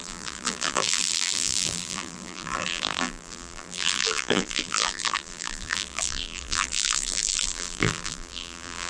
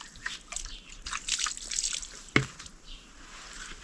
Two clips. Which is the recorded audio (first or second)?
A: second